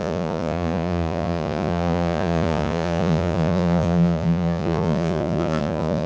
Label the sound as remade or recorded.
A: remade